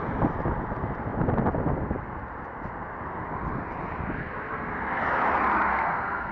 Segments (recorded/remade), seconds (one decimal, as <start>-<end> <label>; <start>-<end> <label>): 0.0-4.2 recorded; 4.2-5.0 remade; 5.0-5.7 recorded; 5.7-6.3 remade